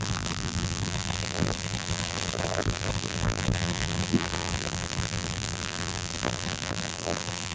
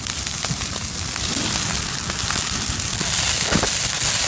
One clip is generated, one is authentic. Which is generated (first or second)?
first